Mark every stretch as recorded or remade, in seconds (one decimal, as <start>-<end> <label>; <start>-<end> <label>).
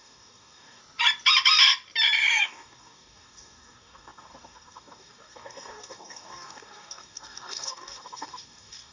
0.0-0.8 remade; 0.8-2.4 recorded; 2.4-8.9 remade